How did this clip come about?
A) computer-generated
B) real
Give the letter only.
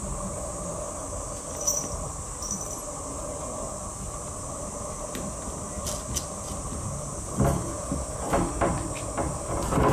B